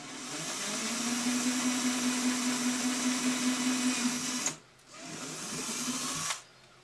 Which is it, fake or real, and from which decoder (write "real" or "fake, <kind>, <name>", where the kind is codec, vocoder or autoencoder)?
real